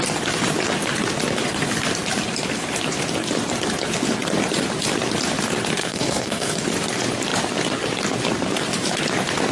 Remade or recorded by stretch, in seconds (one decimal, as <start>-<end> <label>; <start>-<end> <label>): 0.0-5.8 recorded; 5.8-6.6 remade; 6.6-9.5 recorded